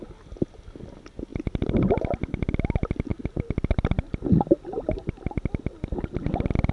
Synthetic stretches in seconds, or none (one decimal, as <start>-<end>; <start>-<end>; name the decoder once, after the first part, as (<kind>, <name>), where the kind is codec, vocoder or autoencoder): 1.3-1.8 (vocoder, BigVGAN v2)